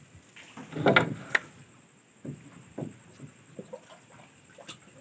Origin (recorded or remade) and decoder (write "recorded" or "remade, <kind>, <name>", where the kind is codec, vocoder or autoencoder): recorded